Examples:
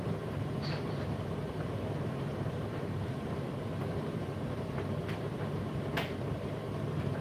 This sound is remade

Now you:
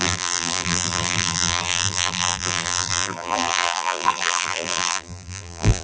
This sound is remade